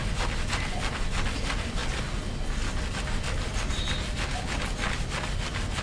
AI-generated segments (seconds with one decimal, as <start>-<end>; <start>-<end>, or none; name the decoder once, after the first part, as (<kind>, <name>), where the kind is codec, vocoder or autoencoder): none